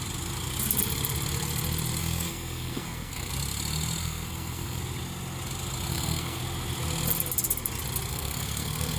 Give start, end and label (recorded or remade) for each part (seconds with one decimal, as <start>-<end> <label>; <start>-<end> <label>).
0.0-2.0 recorded; 2.0-3.3 remade; 3.3-4.0 recorded; 4.0-4.8 remade; 4.8-5.9 recorded; 5.9-6.4 remade; 6.4-8.1 recorded; 8.1-9.0 remade